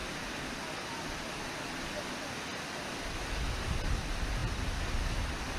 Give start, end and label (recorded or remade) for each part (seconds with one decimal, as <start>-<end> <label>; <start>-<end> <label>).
0.0-5.6 recorded